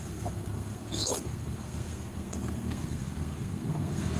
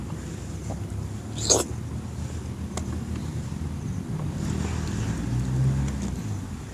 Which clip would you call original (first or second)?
second